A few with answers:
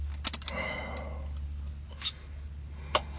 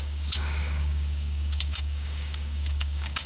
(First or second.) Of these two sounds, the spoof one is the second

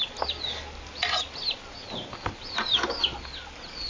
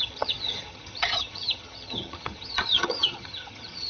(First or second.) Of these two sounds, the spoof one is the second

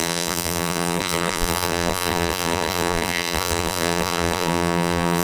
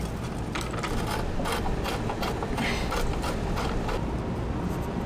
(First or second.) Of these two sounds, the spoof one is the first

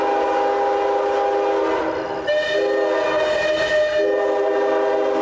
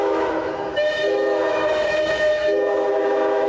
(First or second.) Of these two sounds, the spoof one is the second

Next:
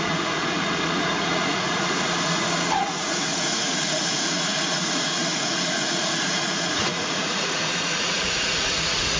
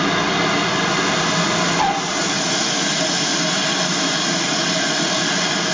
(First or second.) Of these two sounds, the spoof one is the first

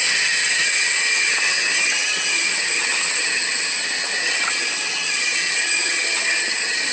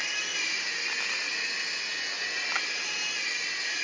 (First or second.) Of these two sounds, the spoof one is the first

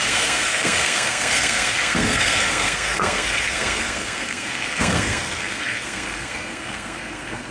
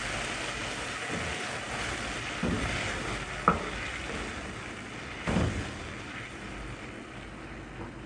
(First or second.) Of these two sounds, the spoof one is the first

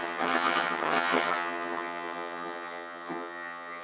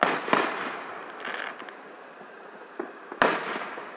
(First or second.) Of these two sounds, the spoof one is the first